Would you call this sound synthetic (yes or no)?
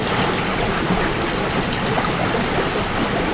no